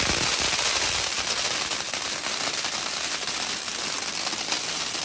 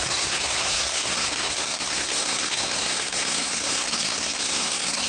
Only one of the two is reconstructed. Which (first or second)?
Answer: second